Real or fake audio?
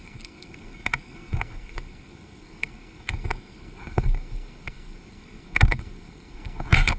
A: fake